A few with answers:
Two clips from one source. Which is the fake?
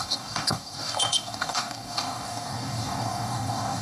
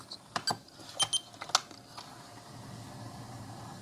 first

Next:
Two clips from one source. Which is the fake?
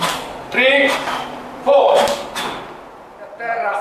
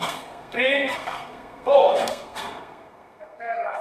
second